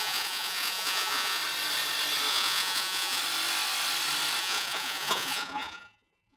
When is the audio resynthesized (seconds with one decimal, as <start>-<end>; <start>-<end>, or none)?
0.0-1.4; 2.3-3.2; 4.4-6.4